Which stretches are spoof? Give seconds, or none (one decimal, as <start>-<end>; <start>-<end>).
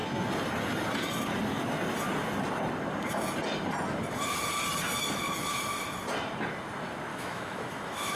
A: 7.1-8.2